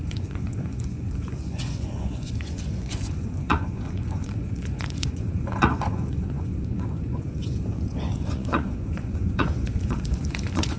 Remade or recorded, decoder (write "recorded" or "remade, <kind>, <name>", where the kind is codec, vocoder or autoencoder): remade, vocoder, Vocos